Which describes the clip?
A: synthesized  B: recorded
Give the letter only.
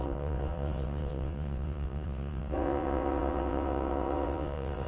A